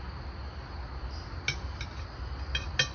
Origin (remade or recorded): recorded